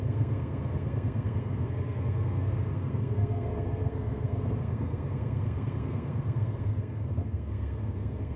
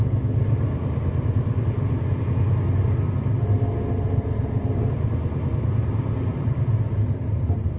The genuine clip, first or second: second